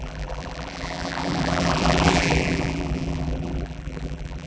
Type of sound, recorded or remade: remade